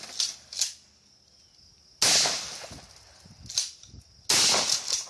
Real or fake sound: real